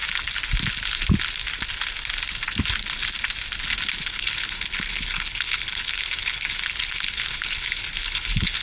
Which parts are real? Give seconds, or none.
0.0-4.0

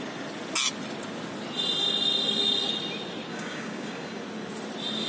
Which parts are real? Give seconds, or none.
0.0-3.3; 4.2-5.1